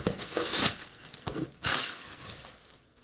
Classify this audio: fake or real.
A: fake